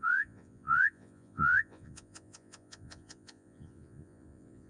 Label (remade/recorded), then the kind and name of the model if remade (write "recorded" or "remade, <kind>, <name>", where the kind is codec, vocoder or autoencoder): remade, vocoder, Vocos